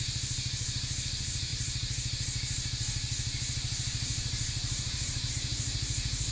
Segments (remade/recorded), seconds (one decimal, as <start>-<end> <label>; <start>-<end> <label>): 0.0-6.3 remade